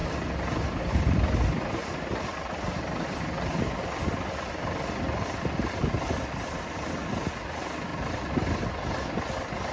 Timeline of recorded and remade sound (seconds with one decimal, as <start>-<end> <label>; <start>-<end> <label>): 0.0-2.3 recorded; 2.3-7.1 remade; 7.1-7.9 recorded; 7.9-9.1 remade; 9.1-9.7 recorded